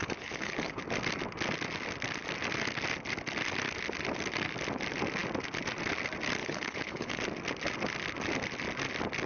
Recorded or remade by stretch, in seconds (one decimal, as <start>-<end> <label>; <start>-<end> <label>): 0.0-0.8 remade; 0.8-6.4 recorded; 6.4-7.2 remade; 7.2-9.3 recorded